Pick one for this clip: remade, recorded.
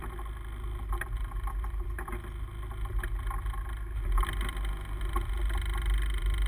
recorded